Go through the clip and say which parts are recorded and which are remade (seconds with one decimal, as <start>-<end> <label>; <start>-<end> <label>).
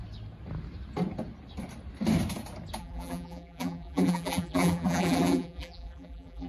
0.0-2.8 recorded; 2.8-6.5 remade